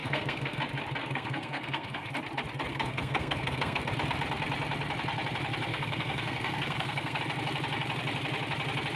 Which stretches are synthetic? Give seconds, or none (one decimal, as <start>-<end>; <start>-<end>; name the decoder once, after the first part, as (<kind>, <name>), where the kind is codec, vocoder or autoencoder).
0.0-0.6 (codec, SNAC); 1.0-2.1; 2.7-3.8; 5.7-7.2